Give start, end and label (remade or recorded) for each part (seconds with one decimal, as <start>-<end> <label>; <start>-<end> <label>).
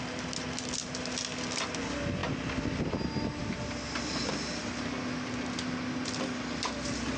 0.0-7.2 recorded